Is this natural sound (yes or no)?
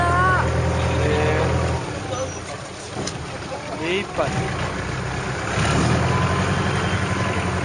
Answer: yes